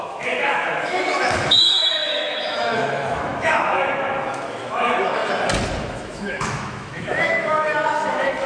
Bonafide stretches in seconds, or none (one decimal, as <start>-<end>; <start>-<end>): 5.2-5.8